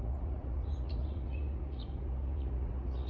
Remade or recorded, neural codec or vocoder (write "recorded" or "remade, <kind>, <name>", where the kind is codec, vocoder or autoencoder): remade, vocoder, Vocos